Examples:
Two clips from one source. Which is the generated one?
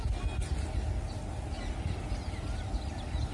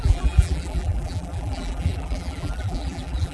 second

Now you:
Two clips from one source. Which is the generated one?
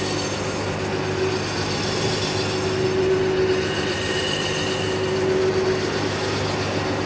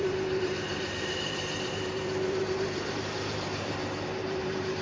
second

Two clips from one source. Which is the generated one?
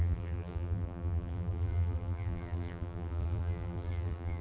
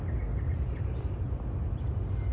first